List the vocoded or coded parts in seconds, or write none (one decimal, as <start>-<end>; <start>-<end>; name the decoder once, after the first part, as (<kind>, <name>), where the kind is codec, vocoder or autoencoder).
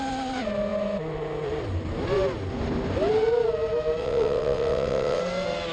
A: 4.0-5.2 (vocoder, WaveNeXt)